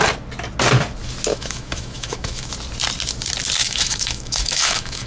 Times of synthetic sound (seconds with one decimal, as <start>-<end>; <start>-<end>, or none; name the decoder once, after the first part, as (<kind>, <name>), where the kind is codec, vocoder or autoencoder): 1.3-2.5 (autoencoder, DAC-VAE); 3.6-5.1